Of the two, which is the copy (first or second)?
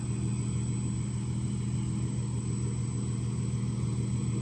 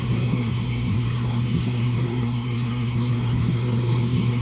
second